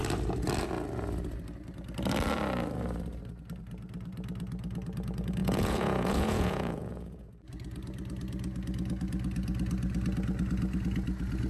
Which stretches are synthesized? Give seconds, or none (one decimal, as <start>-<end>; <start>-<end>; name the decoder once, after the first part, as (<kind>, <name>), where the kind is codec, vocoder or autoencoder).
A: 5.4-7.3 (vocoder, Vocos)